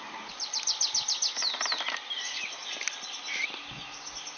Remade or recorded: recorded